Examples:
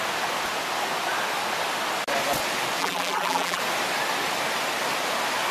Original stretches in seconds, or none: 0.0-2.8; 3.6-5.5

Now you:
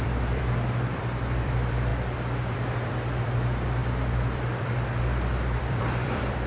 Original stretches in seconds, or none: 1.9-2.5